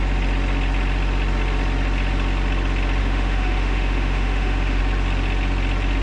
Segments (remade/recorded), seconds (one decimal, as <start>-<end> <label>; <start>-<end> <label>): 0.0-3.0 recorded; 3.0-4.8 remade; 4.8-6.0 recorded